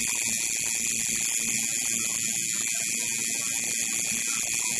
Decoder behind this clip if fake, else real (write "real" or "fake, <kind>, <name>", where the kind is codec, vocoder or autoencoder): real